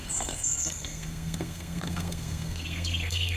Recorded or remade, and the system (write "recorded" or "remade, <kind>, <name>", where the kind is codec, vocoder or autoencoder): remade, codec, SNAC